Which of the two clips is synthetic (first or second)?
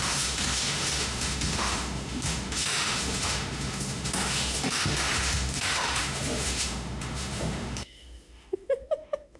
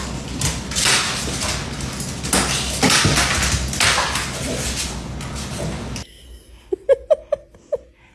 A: first